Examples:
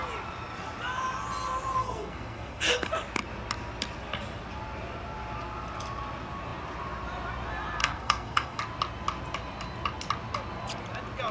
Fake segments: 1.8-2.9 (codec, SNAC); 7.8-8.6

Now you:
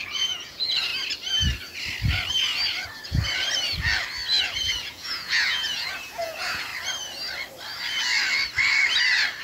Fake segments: 0.0-0.9 (vocoder, Vocos); 4.4-6.7

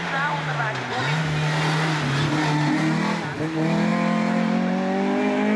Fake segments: none